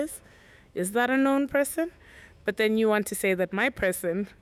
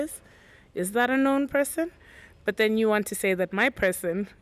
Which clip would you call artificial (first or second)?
first